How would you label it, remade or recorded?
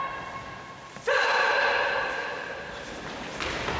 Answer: recorded